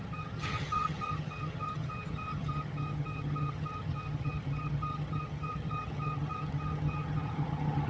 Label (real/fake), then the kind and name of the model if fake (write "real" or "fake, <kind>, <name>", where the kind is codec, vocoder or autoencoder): fake, vocoder, HiFi-GAN